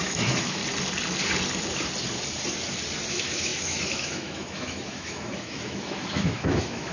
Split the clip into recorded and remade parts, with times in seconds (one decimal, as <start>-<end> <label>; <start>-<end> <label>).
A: 0.0-0.6 remade; 0.6-3.1 recorded; 3.1-6.9 remade